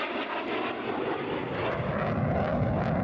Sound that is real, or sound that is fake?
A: real